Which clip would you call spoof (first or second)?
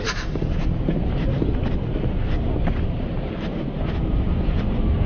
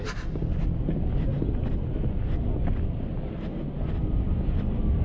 first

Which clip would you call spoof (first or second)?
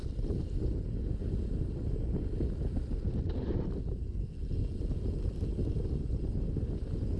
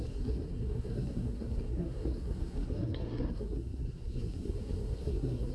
second